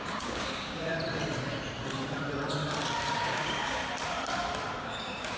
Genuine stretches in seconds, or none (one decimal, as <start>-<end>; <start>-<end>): 0.9-3.2; 3.8-4.8